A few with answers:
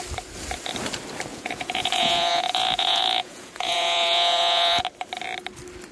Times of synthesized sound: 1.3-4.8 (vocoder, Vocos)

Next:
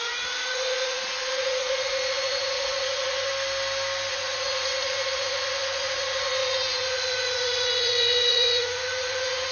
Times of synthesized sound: 0.0-3.3 (vocoder, Vocos); 4.1-9.5

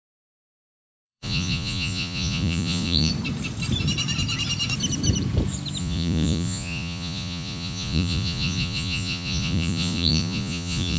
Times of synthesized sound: 0.0-3.1 (vocoder, Vocos); 5.8-11.0

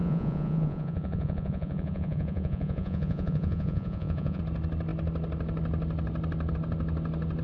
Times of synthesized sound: 0.0-4.4 (vocoder, Vocos)

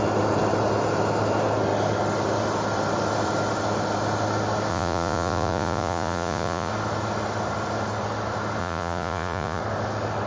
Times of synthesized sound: 4.7-6.7 (vocoder, Vocos); 8.6-9.6

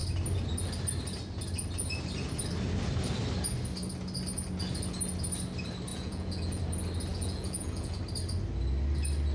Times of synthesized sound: 5.9-6.6 (vocoder, Vocos); 7.1-8.0